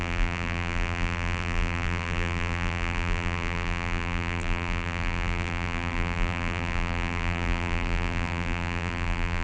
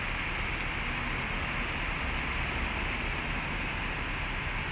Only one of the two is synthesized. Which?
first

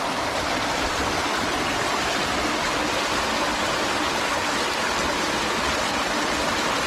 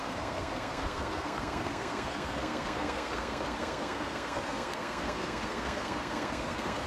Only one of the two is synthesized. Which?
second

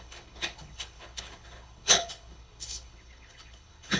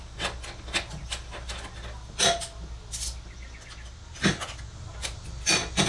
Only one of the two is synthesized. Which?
first